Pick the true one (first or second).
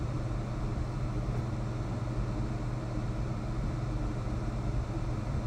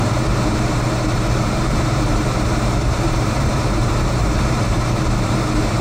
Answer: first